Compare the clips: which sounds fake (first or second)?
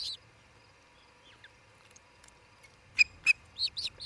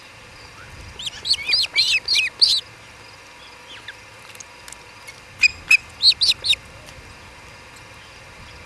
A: first